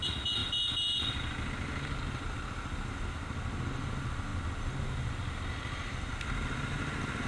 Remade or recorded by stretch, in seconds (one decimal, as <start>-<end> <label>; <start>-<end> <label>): 0.0-7.3 recorded